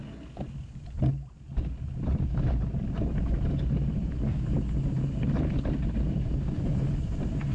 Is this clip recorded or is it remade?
recorded